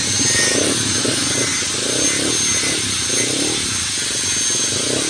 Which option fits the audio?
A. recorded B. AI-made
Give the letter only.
A